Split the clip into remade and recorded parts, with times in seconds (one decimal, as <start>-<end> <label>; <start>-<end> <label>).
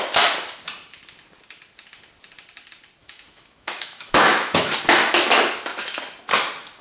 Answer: 0.0-3.0 recorded; 3.0-4.7 remade; 4.7-6.8 recorded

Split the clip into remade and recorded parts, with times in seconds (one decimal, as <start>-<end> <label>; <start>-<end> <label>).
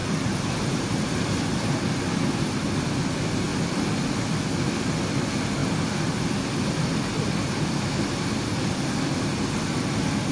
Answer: 0.0-1.7 remade; 1.7-10.3 recorded